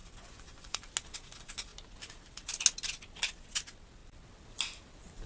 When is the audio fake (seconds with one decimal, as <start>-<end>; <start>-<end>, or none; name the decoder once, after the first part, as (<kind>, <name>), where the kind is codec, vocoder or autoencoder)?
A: 0.0-0.9 (vocoder, Vocos)